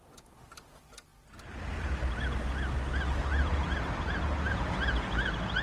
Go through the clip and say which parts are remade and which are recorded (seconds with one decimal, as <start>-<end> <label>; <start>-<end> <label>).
0.0-5.6 recorded